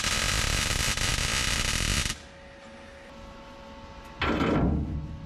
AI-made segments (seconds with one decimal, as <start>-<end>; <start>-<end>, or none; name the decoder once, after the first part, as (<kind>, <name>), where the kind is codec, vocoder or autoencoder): none